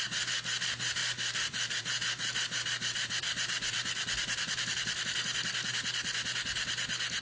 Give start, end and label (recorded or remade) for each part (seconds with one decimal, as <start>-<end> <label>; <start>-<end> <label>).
0.0-1.0 recorded; 1.0-1.8 remade; 1.8-2.3 recorded; 2.3-6.4 remade; 6.4-7.2 recorded